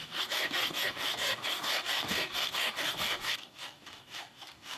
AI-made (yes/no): yes